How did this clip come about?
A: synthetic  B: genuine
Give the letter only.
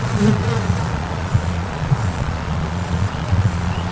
A